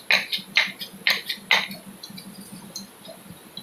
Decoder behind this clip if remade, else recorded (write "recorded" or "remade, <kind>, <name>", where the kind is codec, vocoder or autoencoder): recorded